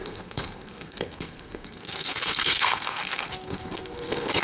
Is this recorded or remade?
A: remade